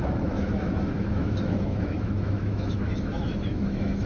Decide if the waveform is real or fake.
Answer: fake